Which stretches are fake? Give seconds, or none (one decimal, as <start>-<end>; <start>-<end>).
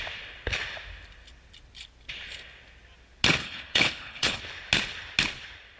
3.4-4.4